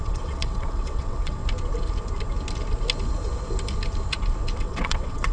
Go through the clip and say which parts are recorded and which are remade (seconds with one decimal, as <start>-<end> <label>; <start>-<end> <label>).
0.0-1.4 remade; 1.4-4.6 recorded; 4.6-5.3 remade